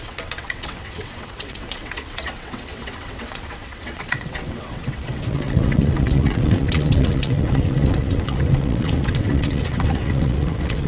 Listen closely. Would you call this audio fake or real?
fake